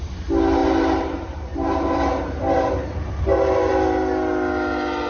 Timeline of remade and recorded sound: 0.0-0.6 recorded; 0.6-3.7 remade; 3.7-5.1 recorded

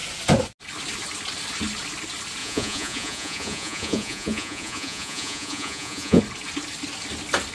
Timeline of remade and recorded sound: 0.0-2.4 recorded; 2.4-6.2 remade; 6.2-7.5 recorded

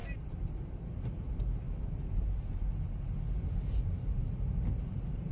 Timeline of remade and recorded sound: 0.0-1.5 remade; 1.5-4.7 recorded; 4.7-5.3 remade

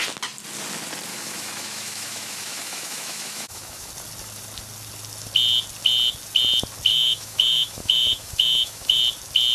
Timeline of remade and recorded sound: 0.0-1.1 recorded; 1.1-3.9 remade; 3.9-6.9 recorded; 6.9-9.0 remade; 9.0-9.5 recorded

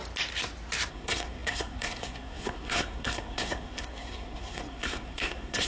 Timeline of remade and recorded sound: 0.0-0.9 recorded; 0.9-5.7 remade

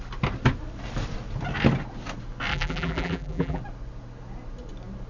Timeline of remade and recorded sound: 0.0-2.5 recorded; 2.5-3.6 remade; 3.6-5.1 recorded